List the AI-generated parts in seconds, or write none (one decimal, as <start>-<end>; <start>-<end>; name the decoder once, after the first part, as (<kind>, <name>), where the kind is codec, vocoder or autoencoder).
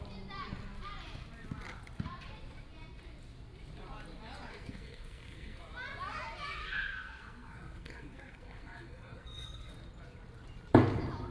4.5-5.6 (codec, SNAC); 6.6-9.7